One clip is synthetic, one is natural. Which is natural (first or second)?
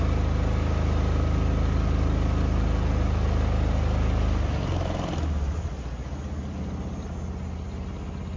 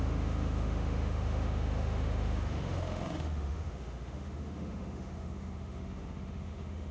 first